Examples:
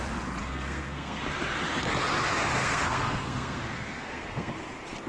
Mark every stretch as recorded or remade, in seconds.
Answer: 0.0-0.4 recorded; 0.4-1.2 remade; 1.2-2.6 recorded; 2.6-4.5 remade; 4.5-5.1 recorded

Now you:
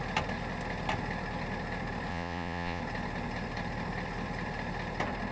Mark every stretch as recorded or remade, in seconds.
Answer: 0.0-2.1 recorded; 2.1-2.8 remade; 2.8-5.3 recorded

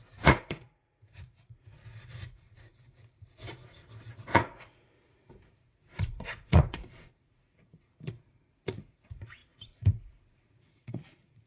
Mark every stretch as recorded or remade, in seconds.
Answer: 0.0-11.5 remade

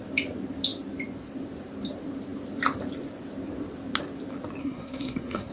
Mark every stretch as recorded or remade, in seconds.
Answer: 0.0-4.6 recorded; 4.6-5.5 remade

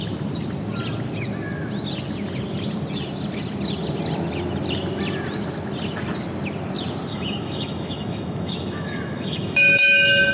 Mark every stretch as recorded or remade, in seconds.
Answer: 0.0-7.1 recorded; 7.1-10.3 remade